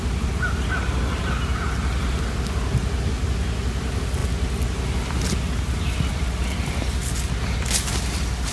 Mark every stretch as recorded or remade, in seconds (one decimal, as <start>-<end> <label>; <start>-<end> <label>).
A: 0.0-8.5 recorded